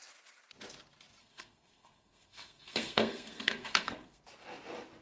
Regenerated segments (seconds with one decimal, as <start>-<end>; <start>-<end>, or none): 1.2-4.2